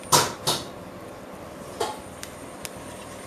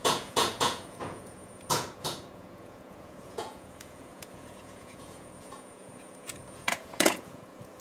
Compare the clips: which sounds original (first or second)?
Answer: first